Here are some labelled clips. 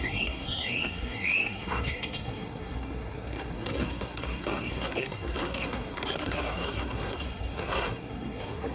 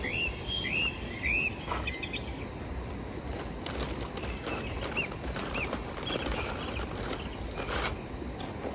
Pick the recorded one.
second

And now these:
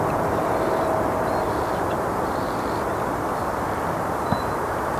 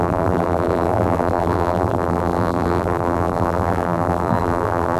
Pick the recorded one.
first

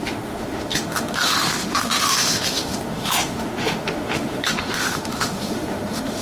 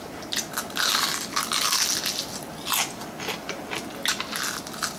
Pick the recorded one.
second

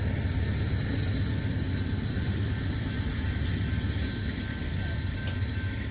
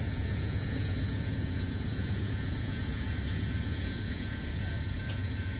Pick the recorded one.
first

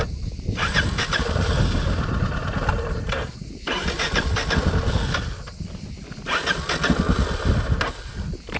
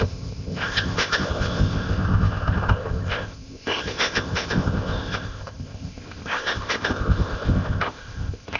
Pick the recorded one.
first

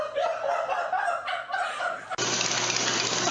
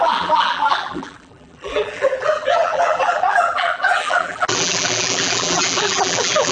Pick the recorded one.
first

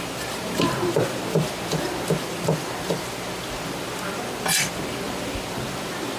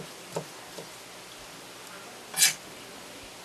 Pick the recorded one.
second